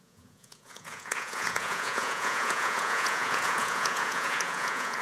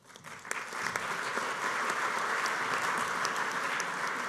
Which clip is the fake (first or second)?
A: first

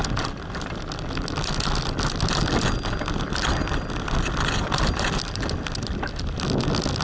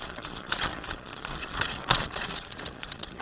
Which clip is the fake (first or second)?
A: second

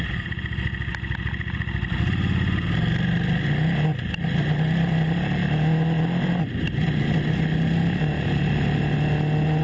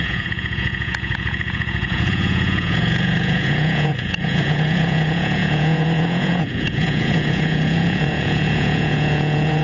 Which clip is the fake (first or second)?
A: second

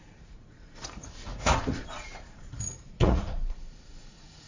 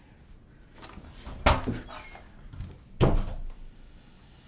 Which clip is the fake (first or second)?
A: first